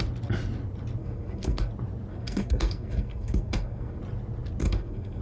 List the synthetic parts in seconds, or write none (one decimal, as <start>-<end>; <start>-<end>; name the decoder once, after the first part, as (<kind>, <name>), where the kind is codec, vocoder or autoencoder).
1.0-1.7 (codec, SNAC); 2.1-4.0; 4.6-5.2